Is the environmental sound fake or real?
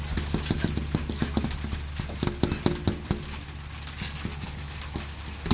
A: real